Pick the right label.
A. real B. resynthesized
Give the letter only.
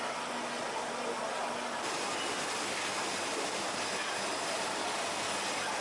A